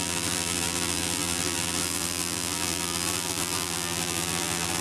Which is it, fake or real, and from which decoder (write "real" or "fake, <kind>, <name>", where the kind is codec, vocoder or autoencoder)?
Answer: fake, vocoder, BigVGAN v2